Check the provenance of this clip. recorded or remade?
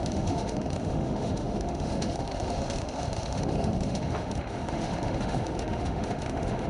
remade